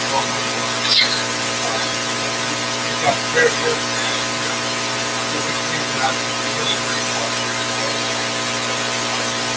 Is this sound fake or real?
real